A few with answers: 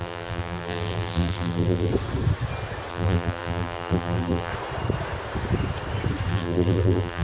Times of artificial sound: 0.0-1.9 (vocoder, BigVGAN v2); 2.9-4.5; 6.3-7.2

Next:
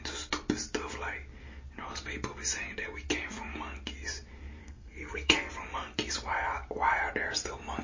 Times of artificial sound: 4.6-5.5 (codec, SNAC)

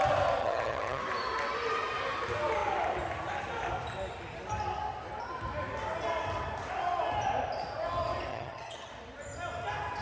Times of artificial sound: 0.4-1.0 (vocoder, HiFi-GAN); 8.3-8.9